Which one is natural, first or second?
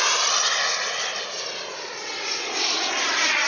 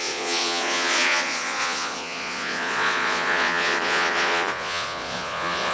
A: first